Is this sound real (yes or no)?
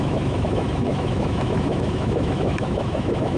no